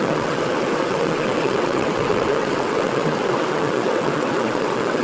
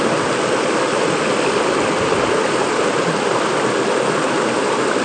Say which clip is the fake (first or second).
first